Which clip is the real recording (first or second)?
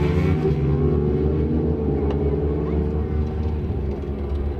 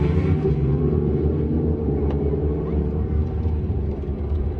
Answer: first